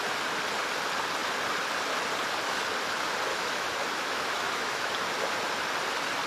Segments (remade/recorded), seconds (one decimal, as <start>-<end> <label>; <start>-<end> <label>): 0.0-3.3 recorded; 3.3-4.9 remade; 4.9-6.3 recorded